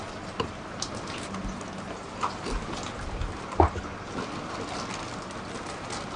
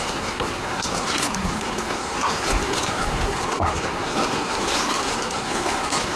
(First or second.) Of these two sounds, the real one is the first